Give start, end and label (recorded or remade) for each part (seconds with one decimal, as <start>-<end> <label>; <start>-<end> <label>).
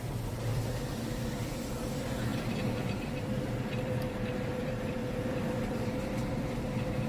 0.0-0.5 recorded; 0.5-1.7 remade; 1.7-2.3 recorded; 2.3-6.6 remade; 6.6-7.1 recorded